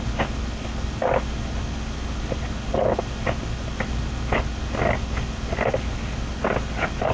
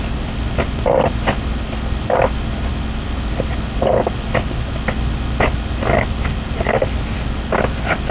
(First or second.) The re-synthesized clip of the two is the second